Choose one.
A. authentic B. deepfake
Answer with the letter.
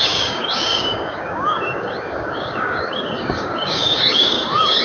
B